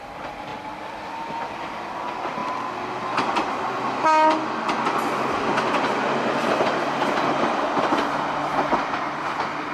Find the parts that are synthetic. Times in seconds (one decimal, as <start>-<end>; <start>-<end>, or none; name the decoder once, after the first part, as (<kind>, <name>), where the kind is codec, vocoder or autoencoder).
none